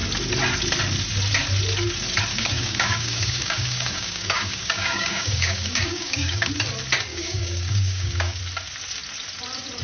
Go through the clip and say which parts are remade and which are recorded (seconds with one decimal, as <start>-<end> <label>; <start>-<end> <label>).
0.0-2.3 recorded; 2.3-6.5 remade; 6.5-7.1 recorded; 7.1-8.4 remade; 8.4-9.8 recorded